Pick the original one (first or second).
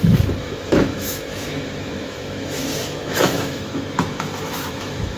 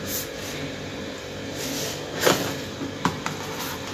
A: second